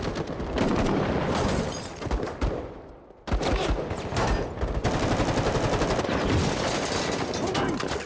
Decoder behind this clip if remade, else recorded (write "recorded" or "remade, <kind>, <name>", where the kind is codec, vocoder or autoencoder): recorded